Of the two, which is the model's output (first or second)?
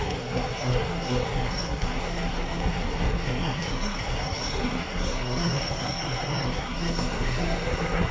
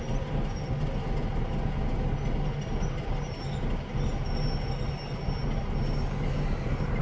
first